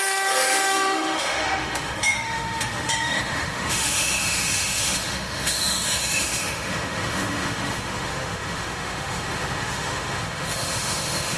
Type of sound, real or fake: fake